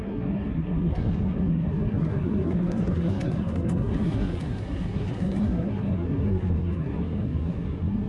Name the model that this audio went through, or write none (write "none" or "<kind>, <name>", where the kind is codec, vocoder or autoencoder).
codec, SNAC